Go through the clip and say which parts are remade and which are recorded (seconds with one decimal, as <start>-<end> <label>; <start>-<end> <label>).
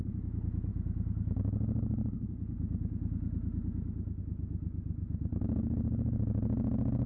0.0-7.1 recorded